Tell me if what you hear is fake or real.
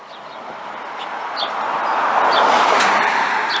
real